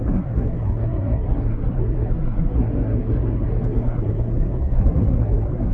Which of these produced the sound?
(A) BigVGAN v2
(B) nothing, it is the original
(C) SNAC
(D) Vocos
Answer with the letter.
C